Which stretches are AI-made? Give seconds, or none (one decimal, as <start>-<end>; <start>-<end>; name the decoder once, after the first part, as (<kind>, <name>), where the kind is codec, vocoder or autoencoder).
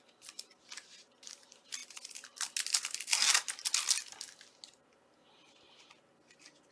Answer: none